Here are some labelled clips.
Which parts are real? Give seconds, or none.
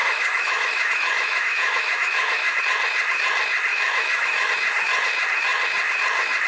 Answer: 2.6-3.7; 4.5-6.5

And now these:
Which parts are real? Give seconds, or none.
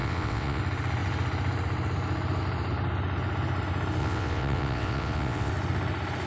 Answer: 0.6-4.0; 5.5-6.3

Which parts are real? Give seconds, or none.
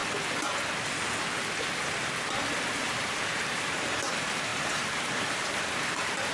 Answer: 0.0-2.8